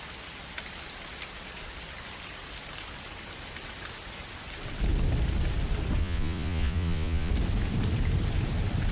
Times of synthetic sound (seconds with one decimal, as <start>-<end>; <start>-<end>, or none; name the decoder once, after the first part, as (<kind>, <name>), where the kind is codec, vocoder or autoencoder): 6.0-7.3 (vocoder, Vocos)